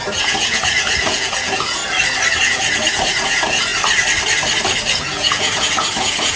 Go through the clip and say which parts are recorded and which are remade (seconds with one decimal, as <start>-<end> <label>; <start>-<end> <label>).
0.0-1.8 remade; 1.8-2.4 recorded; 2.4-3.7 remade; 3.7-4.9 recorded; 4.9-6.4 remade